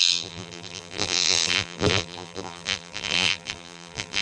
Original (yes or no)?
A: no